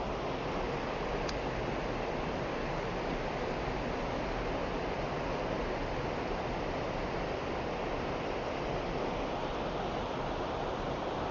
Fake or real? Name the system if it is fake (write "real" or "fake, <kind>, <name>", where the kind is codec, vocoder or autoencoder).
real